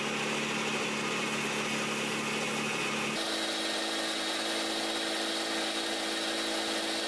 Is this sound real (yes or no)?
yes